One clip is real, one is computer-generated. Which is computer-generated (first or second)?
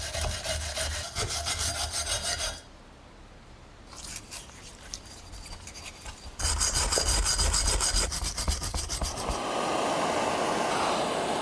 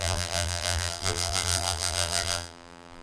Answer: second